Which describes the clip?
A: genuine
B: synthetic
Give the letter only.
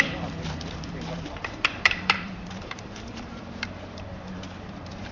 B